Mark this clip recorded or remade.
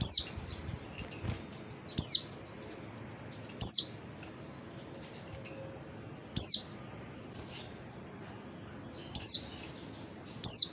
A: recorded